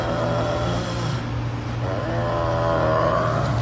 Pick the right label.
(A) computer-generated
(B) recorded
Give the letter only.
B